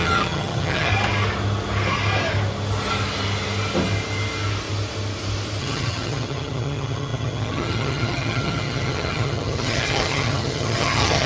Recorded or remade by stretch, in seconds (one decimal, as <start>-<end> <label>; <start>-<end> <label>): 0.0-0.9 remade; 0.9-5.6 recorded; 5.6-11.3 remade